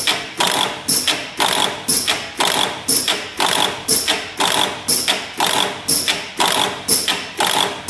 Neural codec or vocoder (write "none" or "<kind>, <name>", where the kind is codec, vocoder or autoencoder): none